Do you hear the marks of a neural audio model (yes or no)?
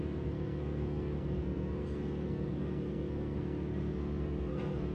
yes